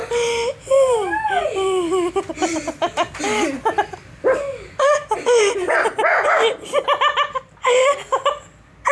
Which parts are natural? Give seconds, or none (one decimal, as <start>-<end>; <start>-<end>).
none